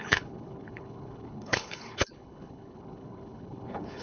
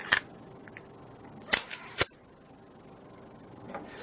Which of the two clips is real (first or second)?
second